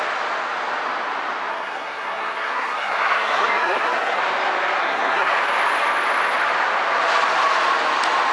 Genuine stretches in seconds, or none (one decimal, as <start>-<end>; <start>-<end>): 0.0-1.5; 4.2-4.8; 5.3-8.3